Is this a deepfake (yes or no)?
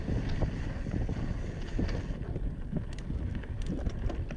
no